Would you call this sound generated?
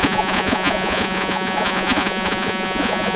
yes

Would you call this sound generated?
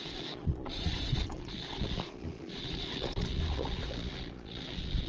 yes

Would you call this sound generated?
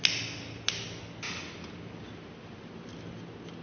no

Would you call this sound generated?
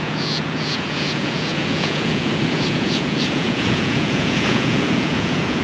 yes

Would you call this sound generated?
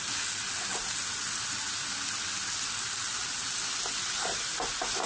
no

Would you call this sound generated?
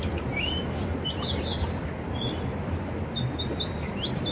no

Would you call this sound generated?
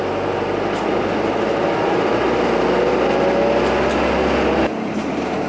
no